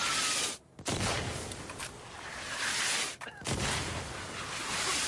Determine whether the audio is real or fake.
real